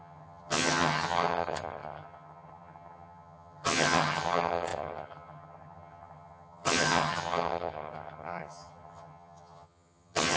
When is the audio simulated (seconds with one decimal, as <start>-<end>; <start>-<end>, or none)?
0.0-10.4